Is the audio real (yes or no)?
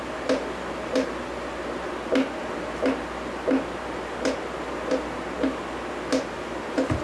yes